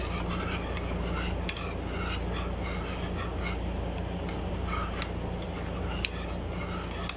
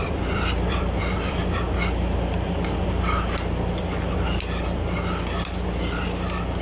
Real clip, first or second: first